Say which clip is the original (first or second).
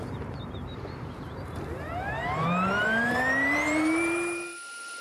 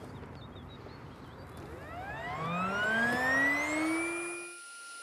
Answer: second